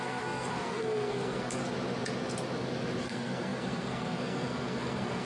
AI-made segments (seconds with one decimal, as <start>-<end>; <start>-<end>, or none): 0.0-1.6; 3.0-5.3